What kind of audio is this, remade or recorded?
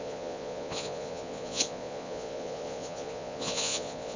remade